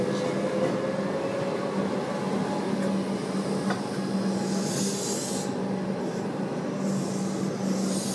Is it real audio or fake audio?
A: real